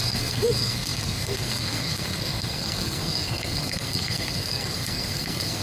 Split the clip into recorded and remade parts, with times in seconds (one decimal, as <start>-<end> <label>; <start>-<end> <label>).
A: 0.0-5.6 remade